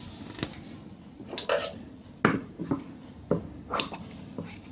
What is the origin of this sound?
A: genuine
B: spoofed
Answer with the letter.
A